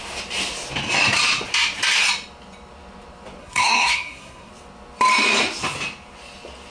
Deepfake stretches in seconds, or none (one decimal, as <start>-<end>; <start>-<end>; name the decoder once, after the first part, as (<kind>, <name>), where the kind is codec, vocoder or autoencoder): 3.4-4.5 (codec, SNAC)